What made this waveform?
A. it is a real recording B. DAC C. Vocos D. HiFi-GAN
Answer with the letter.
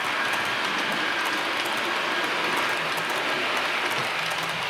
A